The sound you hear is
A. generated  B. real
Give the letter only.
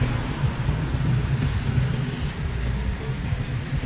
B